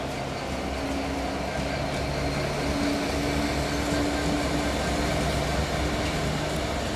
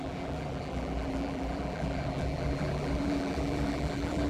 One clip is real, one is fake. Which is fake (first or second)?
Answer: second